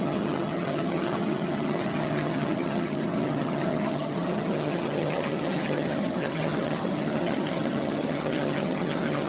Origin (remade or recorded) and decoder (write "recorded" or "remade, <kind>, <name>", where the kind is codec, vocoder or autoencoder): remade, vocoder, HiFi-GAN